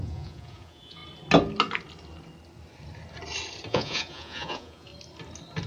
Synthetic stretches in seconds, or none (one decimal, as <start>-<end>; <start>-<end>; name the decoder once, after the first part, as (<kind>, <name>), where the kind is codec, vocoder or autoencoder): 0.0-1.0 (vocoder, Vocos); 3.7-4.9